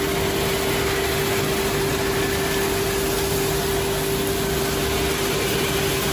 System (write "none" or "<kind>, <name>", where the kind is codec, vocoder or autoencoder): none